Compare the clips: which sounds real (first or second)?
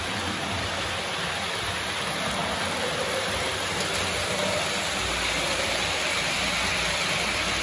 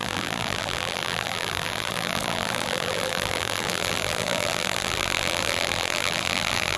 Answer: first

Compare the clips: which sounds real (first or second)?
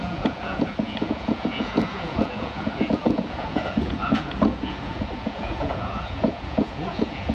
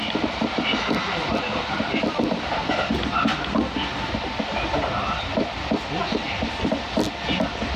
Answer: second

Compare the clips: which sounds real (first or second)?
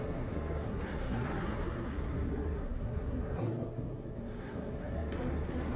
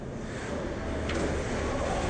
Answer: second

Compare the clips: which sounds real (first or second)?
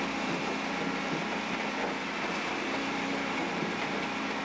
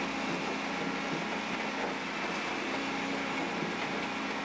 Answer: second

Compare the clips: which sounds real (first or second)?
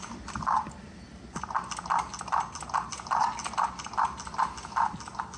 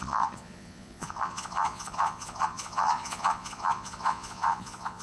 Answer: first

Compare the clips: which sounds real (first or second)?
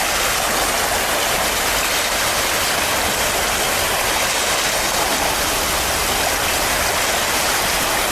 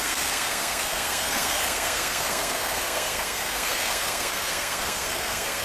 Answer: first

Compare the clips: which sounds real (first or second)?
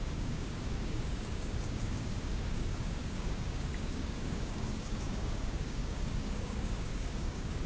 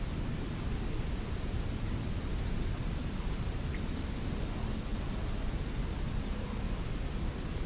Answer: second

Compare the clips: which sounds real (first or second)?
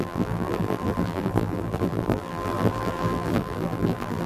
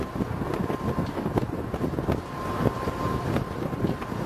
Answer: second